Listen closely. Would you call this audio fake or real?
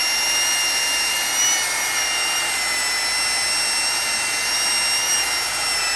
real